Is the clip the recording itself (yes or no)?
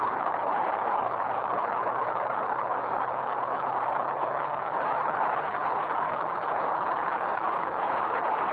no